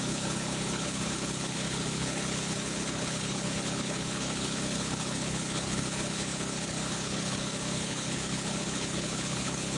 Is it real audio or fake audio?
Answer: fake